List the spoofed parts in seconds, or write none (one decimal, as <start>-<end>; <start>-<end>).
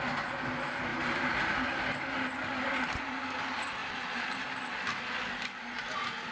0.9-1.7